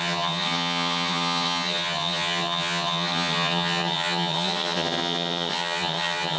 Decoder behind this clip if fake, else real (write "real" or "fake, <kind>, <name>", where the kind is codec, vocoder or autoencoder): fake, vocoder, HiFi-GAN